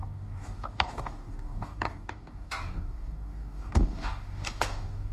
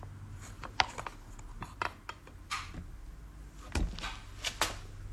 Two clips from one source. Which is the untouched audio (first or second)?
second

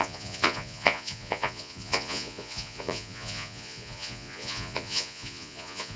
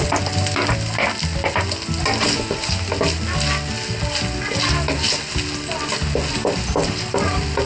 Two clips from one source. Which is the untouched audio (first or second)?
second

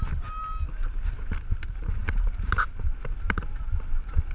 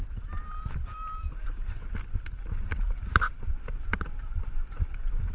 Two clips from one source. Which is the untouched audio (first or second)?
first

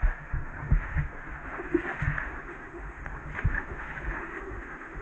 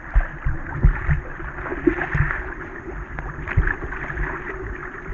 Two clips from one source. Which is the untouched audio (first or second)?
second